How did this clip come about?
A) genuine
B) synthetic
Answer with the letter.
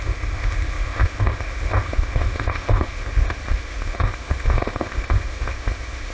B